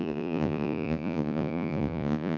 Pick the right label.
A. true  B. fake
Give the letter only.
B